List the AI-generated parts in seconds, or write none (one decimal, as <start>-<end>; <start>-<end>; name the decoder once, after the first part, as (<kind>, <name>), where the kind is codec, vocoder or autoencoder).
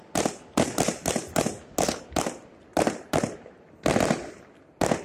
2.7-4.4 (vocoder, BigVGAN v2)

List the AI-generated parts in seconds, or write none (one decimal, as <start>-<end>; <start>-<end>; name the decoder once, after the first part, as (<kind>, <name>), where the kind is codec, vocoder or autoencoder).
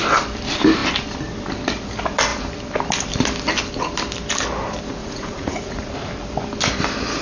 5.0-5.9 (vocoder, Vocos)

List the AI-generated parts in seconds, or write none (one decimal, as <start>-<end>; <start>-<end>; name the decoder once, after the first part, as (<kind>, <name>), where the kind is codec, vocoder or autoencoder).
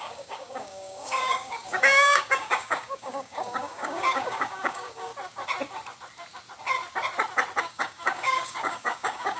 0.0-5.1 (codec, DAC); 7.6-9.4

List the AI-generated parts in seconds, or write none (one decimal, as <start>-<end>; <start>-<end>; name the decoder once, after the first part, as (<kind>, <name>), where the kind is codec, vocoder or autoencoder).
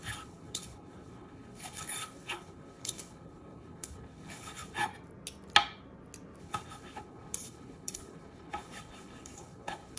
0.0-4.9 (codec, HILCodec); 6.4-10.0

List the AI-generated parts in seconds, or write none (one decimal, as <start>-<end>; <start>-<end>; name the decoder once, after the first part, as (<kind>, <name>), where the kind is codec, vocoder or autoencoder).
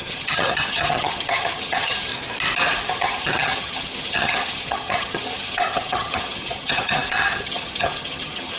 0.0-2.1 (vocoder, HiFi-GAN); 2.9-8.6